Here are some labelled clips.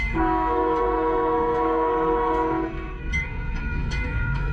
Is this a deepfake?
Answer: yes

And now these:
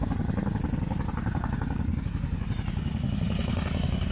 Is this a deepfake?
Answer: no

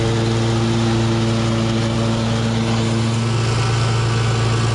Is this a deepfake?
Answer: no